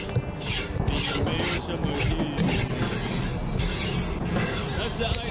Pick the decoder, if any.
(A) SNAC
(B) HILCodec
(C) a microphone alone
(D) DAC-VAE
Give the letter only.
C